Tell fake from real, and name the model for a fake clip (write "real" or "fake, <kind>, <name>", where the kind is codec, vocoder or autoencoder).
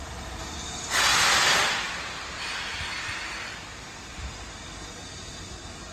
real